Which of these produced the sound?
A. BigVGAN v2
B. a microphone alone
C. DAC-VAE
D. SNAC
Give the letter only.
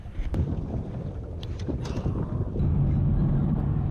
B